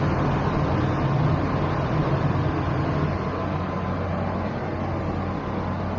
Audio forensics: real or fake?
real